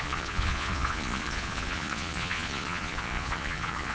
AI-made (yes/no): yes